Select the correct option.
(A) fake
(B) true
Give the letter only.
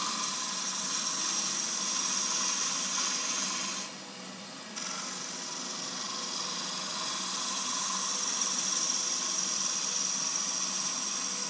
B